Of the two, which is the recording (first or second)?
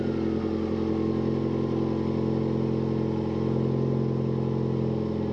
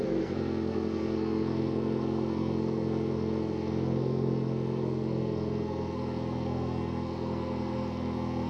first